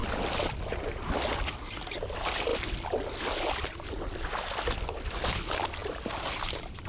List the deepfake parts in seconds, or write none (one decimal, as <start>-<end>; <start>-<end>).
none